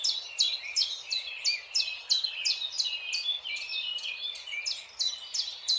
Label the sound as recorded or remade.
recorded